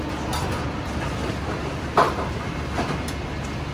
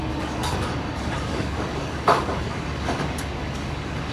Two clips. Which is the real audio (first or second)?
first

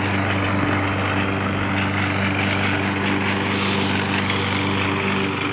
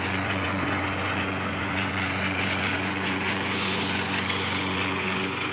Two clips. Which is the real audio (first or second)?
first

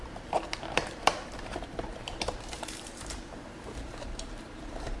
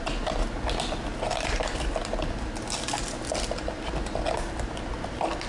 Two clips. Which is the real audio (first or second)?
second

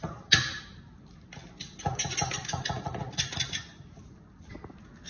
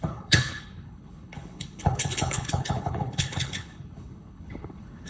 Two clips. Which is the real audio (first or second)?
first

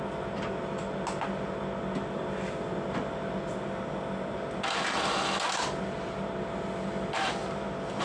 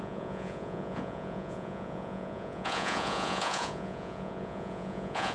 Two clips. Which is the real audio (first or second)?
first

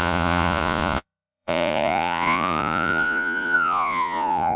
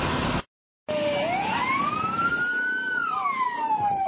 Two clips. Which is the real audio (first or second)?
second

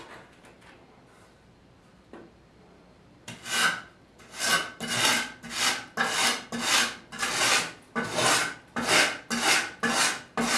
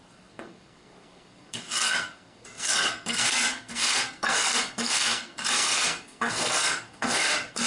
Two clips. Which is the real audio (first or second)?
first